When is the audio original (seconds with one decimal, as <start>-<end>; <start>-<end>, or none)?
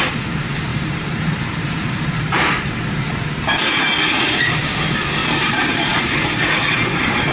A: 0.0-0.7; 4.6-5.2; 6.6-7.3